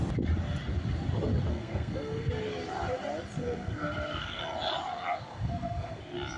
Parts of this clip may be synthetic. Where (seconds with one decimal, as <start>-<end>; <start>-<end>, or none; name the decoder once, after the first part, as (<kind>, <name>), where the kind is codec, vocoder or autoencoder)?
1.5-2.3 (codec, SNAC); 3.4-4.4; 5.3-6.0